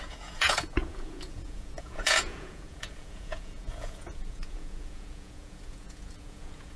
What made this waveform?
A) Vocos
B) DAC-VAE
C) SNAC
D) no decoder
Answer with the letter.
A